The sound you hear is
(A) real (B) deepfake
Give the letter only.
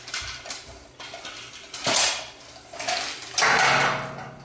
A